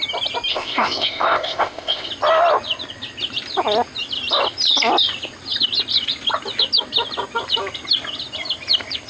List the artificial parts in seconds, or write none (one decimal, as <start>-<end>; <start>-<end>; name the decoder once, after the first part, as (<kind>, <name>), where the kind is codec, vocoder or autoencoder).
0.5-2.1 (codec, ZipCodec)